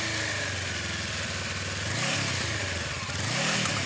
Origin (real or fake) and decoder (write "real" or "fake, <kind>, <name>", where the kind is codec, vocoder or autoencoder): real